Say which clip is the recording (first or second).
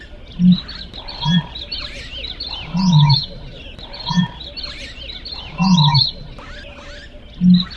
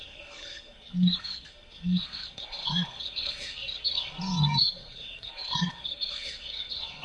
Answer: first